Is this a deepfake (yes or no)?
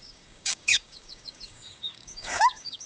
yes